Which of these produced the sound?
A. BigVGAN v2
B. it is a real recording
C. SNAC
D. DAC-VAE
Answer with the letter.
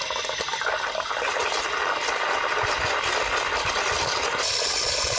B